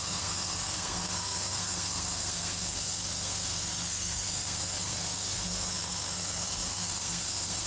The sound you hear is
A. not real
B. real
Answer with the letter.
A